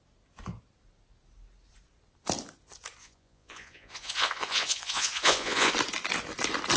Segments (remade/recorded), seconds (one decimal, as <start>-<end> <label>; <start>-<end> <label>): 0.0-3.0 recorded; 3.0-5.7 remade; 5.7-6.8 recorded